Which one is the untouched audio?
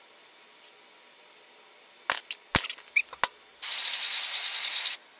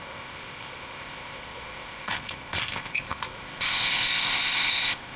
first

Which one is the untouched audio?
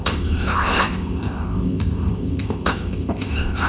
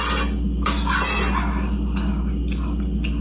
second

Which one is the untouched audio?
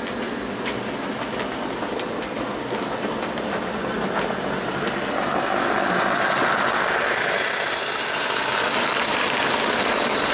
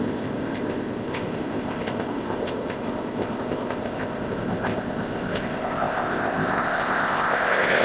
first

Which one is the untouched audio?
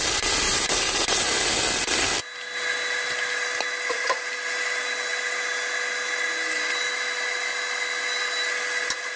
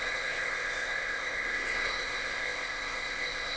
first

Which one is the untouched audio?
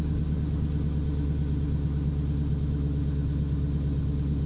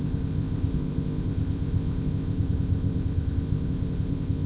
first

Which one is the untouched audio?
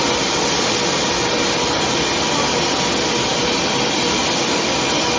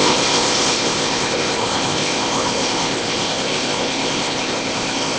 first